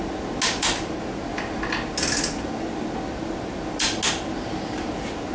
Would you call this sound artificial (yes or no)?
no